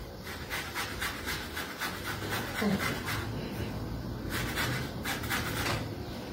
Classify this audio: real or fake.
real